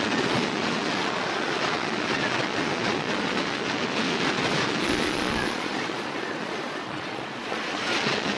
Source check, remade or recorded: remade